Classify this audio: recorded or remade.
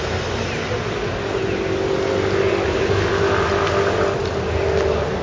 recorded